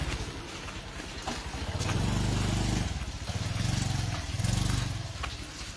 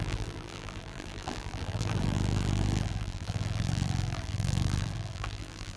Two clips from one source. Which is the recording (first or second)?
first